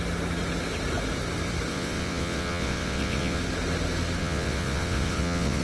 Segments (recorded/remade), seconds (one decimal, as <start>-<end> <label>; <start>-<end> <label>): 0.0-1.7 recorded; 1.7-3.4 remade; 3.4-4.2 recorded; 4.2-5.6 remade